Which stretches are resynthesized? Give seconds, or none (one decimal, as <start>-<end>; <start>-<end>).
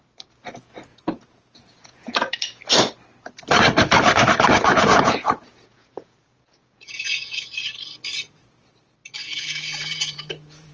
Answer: 0.9-2.6; 4.7-7.5; 9.2-10.7